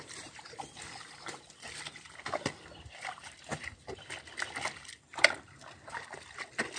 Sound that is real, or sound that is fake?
real